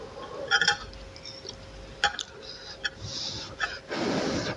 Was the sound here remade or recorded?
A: recorded